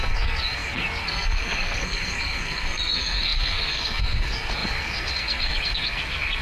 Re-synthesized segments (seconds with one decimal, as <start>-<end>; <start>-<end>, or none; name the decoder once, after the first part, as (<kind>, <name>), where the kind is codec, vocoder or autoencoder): 0.0-6.4 (codec, SNAC)